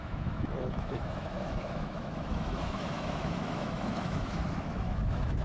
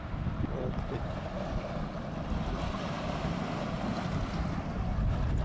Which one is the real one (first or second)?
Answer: second